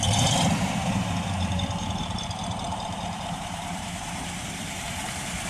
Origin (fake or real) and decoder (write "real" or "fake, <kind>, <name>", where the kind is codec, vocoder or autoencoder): fake, vocoder, BigVGAN v2